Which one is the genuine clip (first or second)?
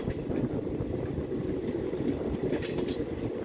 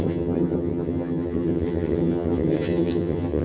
first